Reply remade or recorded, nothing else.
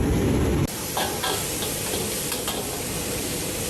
recorded